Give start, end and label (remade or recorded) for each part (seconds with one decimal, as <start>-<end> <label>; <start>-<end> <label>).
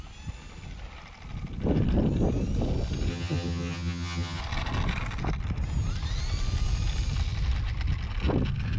0.0-3.1 recorded; 3.1-4.4 remade; 4.4-8.8 recorded